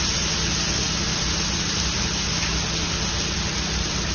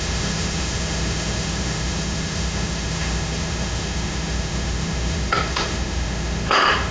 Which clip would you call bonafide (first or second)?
first